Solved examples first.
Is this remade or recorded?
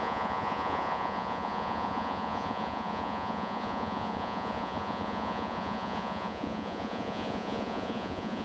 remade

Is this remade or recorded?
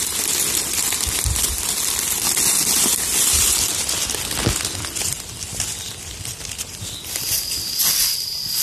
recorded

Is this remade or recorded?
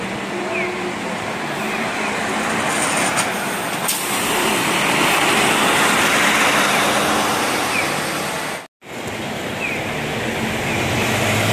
recorded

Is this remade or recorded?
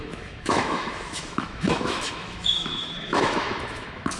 remade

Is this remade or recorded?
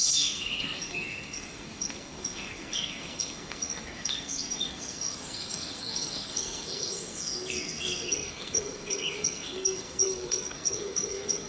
remade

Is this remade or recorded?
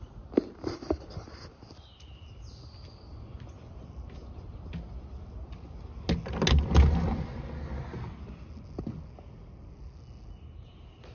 recorded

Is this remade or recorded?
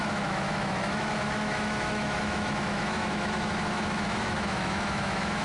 remade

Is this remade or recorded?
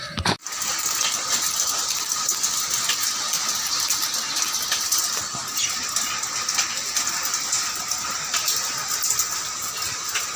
recorded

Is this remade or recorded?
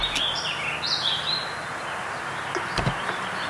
recorded